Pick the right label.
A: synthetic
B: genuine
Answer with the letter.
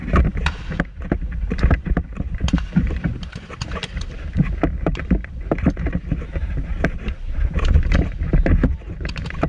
A